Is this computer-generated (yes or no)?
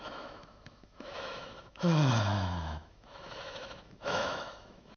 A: yes